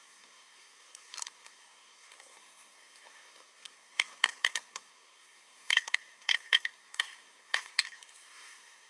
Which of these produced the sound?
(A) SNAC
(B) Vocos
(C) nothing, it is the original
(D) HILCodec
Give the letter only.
A